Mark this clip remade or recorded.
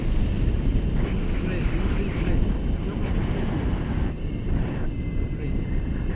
recorded